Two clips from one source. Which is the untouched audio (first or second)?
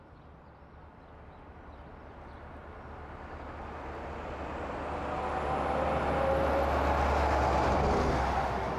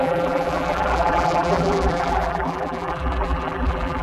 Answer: first